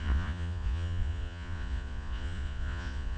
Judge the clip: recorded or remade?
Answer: remade